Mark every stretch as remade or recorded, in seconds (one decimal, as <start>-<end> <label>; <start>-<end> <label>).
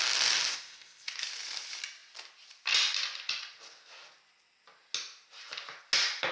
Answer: 0.0-0.5 recorded; 0.5-1.1 remade; 1.1-6.3 recorded